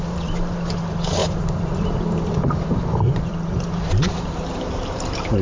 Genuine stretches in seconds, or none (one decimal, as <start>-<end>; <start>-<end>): none